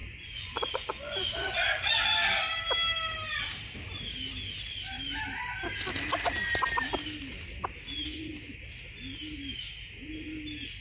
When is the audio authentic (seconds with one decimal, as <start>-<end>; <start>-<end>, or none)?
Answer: 1.9-10.8